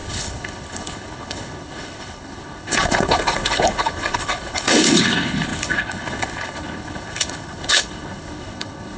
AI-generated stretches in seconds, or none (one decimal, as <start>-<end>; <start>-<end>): 0.0-9.0